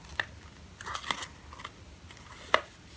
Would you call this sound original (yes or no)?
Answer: yes